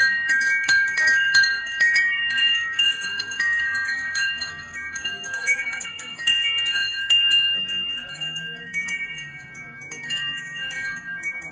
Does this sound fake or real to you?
fake